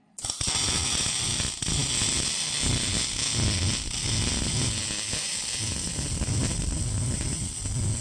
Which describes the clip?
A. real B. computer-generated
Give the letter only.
A